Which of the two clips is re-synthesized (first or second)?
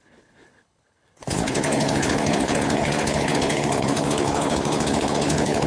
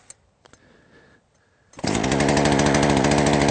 first